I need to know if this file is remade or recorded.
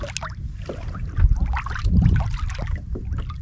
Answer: recorded